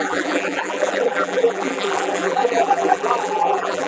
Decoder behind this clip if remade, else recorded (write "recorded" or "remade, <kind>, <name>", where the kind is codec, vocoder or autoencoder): remade, vocoder, BigVGAN v2